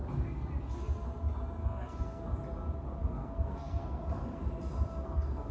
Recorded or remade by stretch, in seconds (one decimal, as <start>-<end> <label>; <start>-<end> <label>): 0.0-1.6 recorded; 1.6-2.2 remade; 2.2-3.0 recorded; 3.0-4.4 remade; 4.4-4.9 recorded; 4.9-5.5 remade